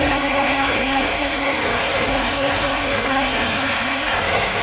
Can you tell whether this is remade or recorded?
remade